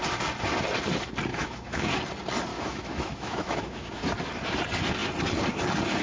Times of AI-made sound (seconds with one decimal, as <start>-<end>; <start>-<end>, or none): 1.3-2.0; 2.5-4.0